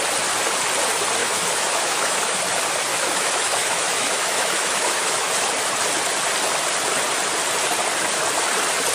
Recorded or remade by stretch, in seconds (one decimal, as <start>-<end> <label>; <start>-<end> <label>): 0.0-1.2 recorded; 1.2-2.4 remade; 2.4-2.9 recorded; 2.9-5.3 remade; 5.3-8.9 recorded